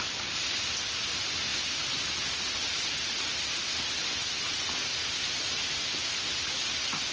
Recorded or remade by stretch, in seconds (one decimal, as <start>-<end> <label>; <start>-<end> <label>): 0.0-7.1 recorded